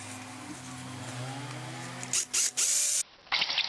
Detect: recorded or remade recorded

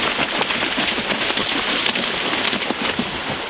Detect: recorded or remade recorded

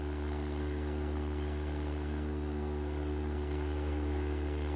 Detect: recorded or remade remade